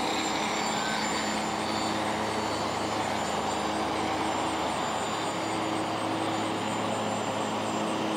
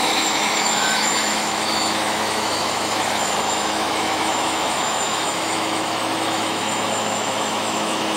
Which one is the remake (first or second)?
second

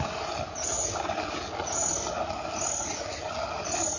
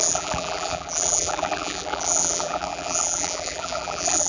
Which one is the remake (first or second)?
second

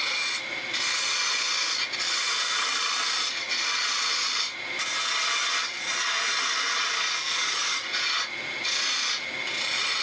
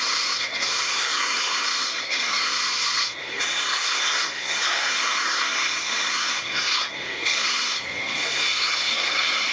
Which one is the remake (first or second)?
second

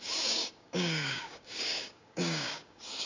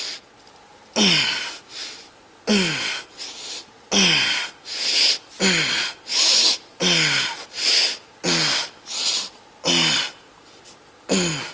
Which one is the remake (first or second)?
first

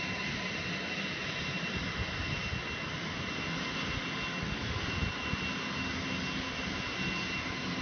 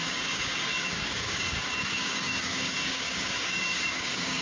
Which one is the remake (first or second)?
second